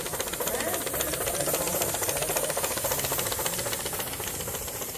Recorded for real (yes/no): yes